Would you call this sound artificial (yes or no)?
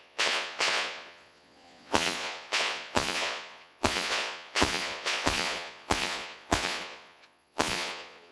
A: yes